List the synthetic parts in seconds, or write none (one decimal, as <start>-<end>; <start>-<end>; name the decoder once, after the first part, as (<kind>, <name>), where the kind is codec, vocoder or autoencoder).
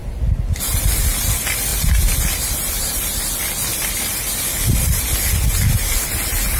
1.7-5.0 (vocoder, BigVGAN v2)